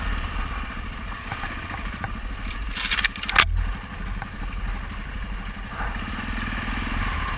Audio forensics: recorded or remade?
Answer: recorded